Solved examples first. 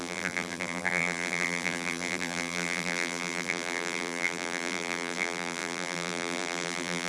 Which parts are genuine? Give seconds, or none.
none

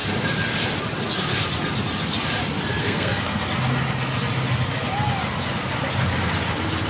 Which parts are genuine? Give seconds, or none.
0.0-2.8; 3.4-6.9

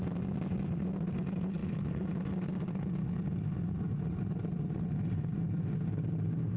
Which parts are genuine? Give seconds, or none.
0.0-6.6

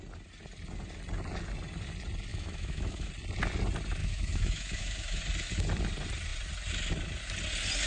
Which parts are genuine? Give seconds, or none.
0.0-2.3; 3.1-4.0; 5.2-7.9

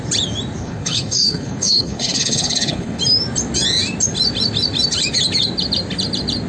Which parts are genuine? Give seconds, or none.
0.0-0.6; 3.0-6.5

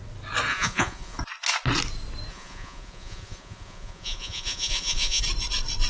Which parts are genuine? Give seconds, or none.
0.0-0.5; 1.2-2.3; 5.2-5.9